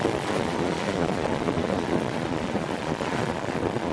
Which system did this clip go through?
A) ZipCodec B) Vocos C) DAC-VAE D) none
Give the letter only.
B